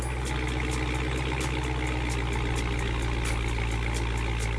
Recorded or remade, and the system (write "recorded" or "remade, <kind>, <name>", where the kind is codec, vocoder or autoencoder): recorded